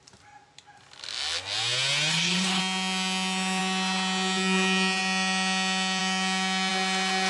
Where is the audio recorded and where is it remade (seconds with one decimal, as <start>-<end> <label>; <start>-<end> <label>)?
0.0-2.1 recorded; 2.1-2.6 remade; 2.6-7.3 recorded